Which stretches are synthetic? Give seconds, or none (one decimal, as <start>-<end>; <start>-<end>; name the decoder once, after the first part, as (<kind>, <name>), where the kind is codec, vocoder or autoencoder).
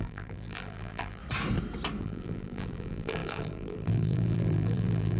0.0-1.2 (vocoder, BigVGAN v2); 2.0-5.2